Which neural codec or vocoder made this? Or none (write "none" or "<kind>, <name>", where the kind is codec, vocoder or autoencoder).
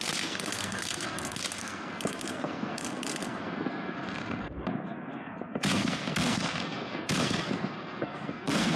codec, SNAC